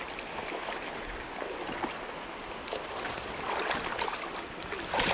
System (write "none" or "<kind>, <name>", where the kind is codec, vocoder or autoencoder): none